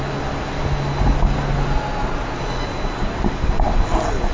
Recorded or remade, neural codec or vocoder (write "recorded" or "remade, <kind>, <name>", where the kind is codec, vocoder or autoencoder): recorded